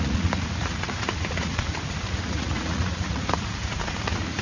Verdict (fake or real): fake